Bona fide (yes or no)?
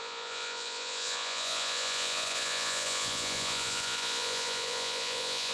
no